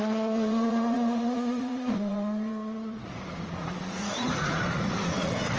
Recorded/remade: remade